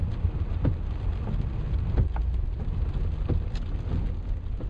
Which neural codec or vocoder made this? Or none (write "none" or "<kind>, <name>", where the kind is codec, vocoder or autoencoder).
none